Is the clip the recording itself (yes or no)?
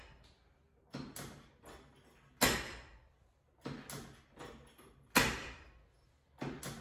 yes